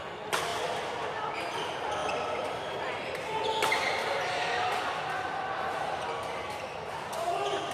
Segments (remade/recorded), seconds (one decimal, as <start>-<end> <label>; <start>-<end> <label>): 0.0-7.7 recorded